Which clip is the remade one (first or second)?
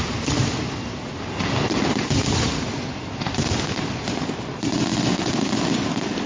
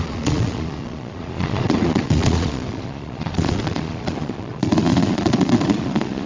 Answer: second